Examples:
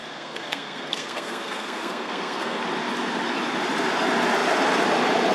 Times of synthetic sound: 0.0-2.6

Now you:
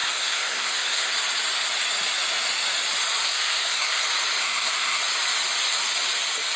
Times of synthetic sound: 0.0-1.1; 3.2-4.0; 4.4-5.0